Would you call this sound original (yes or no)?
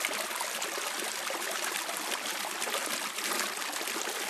yes